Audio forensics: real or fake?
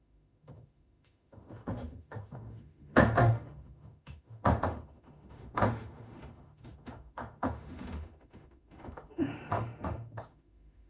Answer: fake